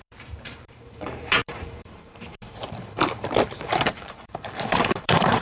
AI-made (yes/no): yes